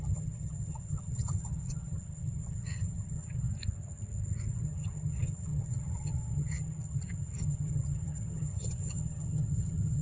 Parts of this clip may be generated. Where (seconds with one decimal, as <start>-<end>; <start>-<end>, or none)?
0.0-3.5; 4.5-10.0